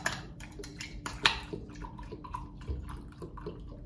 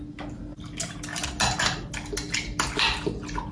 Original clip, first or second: second